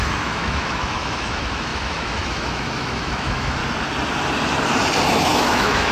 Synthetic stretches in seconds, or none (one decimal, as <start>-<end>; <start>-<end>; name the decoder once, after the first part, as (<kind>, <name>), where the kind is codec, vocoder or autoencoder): 0.0-3.6 (autoencoder, DAC-VAE); 5.1-5.9